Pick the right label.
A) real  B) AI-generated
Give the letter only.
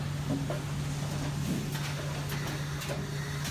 A